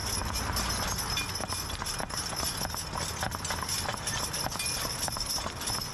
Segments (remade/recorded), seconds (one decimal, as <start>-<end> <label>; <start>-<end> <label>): 0.0-5.9 recorded